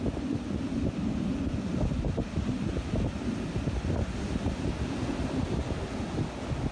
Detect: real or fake real